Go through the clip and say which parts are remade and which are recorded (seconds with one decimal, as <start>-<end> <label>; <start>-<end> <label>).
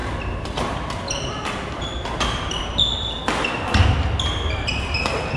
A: 0.0-3.2 remade; 3.2-5.4 recorded